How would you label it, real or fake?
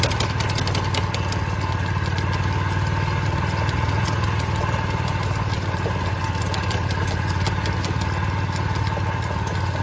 real